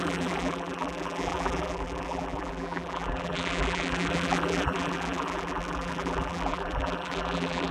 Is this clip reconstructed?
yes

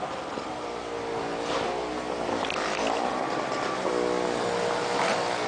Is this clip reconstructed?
no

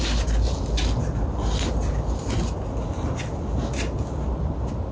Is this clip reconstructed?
no